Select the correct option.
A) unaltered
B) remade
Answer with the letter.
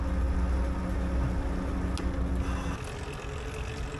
A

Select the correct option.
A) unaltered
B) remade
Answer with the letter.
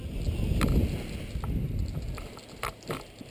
A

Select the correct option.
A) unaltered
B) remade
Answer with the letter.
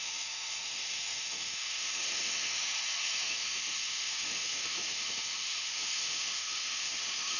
B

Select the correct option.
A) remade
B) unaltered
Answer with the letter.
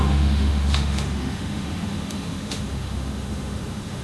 A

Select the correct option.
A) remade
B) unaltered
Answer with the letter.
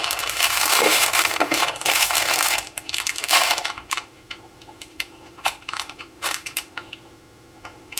A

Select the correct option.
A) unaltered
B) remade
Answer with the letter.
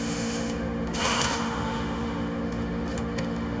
B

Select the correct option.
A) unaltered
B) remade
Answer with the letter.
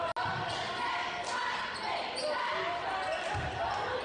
A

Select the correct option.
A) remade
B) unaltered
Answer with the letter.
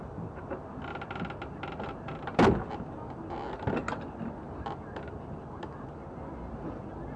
B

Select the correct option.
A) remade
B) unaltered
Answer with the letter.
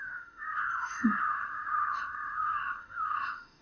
A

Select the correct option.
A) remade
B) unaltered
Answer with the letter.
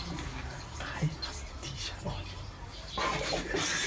B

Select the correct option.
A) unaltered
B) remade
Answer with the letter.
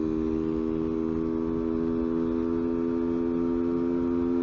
A